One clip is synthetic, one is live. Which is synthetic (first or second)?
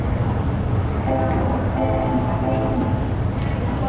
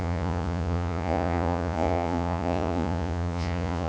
second